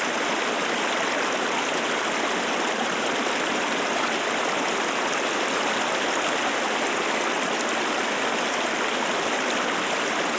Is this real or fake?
real